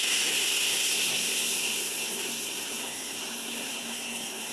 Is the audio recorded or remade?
remade